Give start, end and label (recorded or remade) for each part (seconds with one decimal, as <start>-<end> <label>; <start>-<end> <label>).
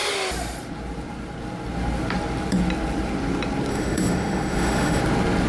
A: 0.0-3.7 recorded; 3.7-5.0 remade; 5.0-5.5 recorded